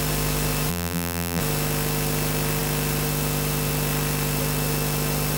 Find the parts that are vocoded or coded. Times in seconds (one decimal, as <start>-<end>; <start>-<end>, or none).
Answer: 0.7-1.4